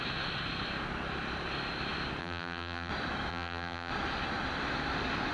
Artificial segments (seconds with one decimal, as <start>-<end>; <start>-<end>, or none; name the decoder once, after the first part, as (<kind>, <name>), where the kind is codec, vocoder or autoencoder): 2.2-2.9 (vocoder, BigVGAN v2); 3.3-3.9